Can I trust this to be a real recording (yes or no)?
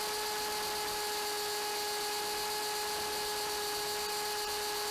yes